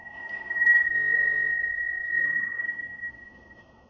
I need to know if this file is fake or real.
fake